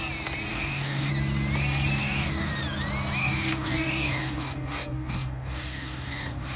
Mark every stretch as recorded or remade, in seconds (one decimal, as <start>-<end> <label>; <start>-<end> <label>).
0.0-0.5 recorded; 0.5-1.1 remade; 1.1-2.0 recorded; 2.0-2.5 remade; 2.5-3.2 recorded; 3.2-6.6 remade